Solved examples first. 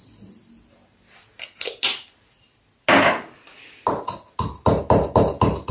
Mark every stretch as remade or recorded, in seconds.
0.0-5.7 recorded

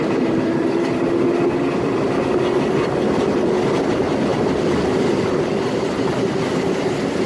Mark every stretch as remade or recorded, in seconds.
0.0-4.3 recorded; 4.3-5.3 remade; 5.3-7.3 recorded

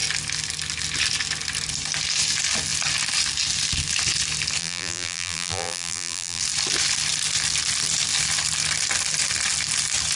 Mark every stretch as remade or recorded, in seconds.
0.0-4.6 recorded; 4.6-6.4 remade; 6.4-10.2 recorded

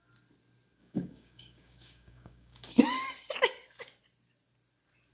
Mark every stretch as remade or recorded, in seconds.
0.0-0.8 recorded; 0.8-2.8 remade; 2.8-5.1 recorded

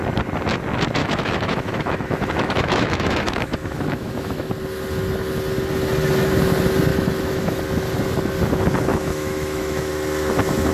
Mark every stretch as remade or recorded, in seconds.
0.0-1.0 recorded; 1.0-4.5 remade; 4.5-6.9 recorded; 6.9-7.6 remade; 7.6-8.9 recorded; 8.9-9.9 remade; 9.9-10.7 recorded

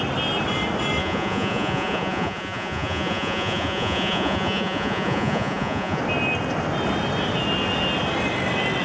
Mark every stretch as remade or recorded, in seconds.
0.0-1.0 recorded; 1.0-6.0 remade; 6.0-8.8 recorded